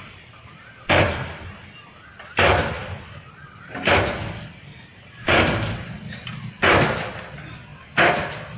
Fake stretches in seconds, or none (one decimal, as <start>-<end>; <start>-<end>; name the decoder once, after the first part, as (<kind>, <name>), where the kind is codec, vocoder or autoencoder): 0.4-1.0 (vocoder, BigVGAN v2); 4.9-6.4